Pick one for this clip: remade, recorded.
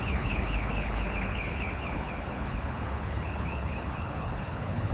remade